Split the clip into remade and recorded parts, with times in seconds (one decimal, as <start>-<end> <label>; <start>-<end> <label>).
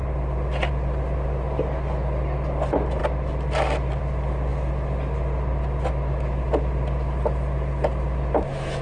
0.0-8.8 recorded